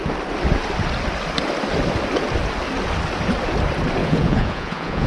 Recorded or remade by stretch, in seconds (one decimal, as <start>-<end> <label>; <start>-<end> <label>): 0.0-4.0 recorded; 4.0-5.1 remade